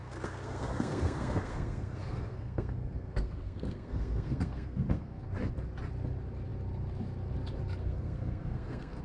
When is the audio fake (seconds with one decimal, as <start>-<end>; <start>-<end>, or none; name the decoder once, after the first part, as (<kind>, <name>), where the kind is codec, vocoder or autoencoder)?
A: 0.0-5.2 (codec, SNAC); 7.8-9.0